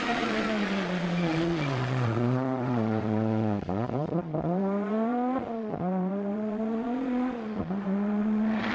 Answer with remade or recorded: remade